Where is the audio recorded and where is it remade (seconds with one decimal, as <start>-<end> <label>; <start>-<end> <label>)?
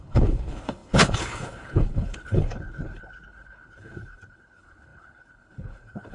0.0-6.1 remade